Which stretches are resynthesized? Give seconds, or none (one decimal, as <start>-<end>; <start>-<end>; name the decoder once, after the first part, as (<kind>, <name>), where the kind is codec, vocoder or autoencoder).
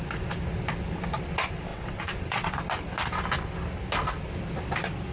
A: 1.7-2.5 (vocoder, WaveNeXt)